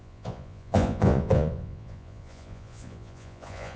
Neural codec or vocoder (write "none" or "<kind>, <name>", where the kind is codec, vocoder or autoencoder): vocoder, Vocos